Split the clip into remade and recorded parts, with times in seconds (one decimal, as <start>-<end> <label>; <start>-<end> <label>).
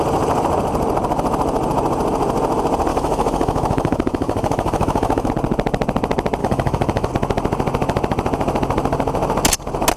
0.0-2.9 recorded; 2.9-5.3 remade; 5.3-6.4 recorded; 6.4-7.1 remade; 7.1-10.0 recorded